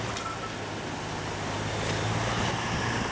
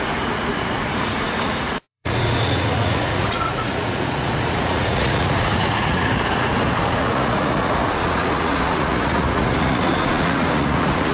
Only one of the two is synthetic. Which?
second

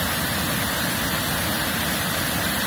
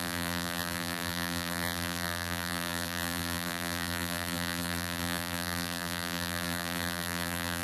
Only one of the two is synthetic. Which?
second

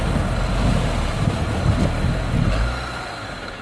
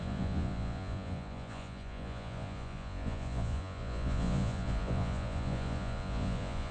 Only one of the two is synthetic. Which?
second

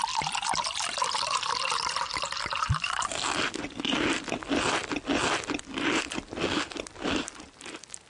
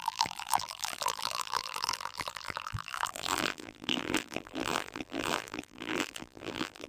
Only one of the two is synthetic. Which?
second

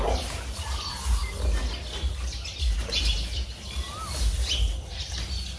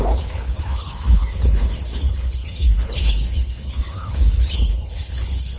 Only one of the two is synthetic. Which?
second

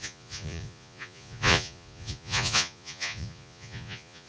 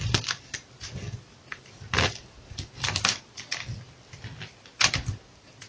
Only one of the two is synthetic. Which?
first